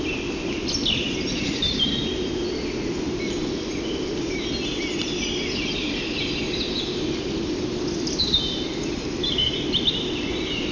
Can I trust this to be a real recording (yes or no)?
yes